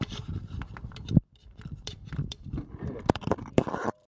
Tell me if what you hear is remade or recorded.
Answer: remade